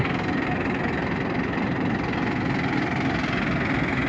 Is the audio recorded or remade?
recorded